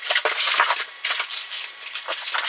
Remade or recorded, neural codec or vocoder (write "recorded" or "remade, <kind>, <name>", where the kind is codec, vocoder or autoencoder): recorded